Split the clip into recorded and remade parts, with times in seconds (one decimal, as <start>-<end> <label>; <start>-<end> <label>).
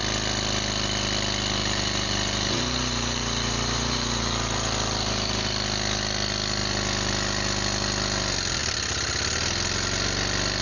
0.0-1.6 recorded; 1.6-5.5 remade; 5.5-10.6 recorded